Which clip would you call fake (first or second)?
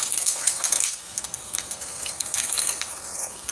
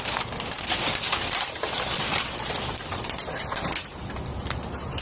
first